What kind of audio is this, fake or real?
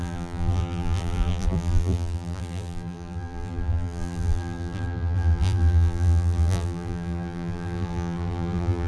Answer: fake